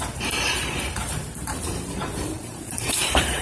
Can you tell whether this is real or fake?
fake